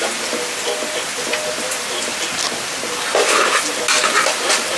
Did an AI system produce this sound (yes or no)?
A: no